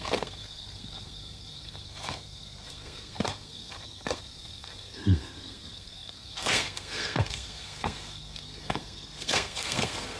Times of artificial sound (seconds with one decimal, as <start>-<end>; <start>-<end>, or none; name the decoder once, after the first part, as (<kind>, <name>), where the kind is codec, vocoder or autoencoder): 0.0-10.2 (codec, SNAC)